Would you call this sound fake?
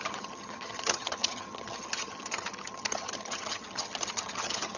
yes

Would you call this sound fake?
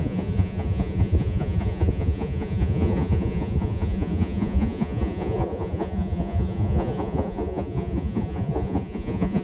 yes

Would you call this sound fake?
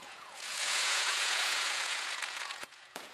yes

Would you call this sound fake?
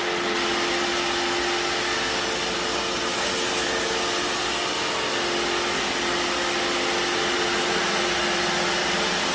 no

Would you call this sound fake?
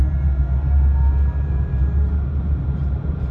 no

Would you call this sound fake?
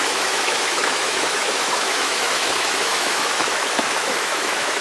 yes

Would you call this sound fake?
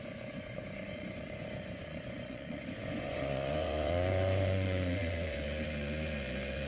yes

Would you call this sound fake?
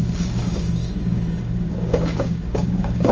yes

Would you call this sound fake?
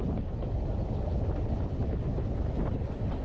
no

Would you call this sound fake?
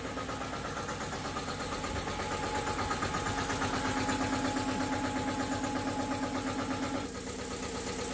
no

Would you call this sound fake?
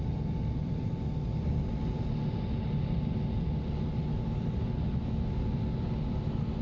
no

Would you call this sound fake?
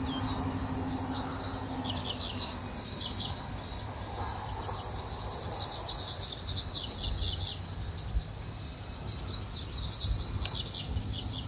no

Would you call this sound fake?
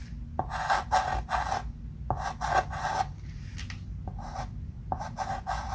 no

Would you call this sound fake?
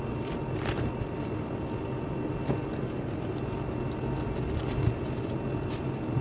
no